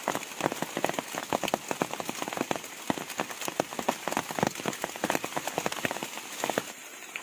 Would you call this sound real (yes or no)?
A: yes